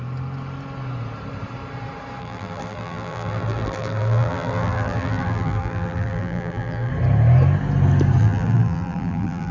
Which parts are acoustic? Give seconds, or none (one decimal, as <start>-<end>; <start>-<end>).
0.0-2.2; 6.9-8.2